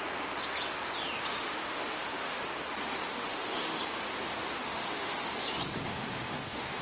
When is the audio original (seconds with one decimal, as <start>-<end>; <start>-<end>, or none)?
0.0-1.3; 2.4-3.1; 3.8-4.6; 5.3-5.9